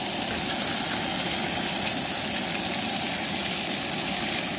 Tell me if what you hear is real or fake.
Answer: real